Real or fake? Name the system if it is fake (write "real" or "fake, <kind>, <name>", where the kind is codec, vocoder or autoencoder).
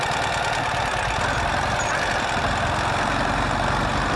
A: real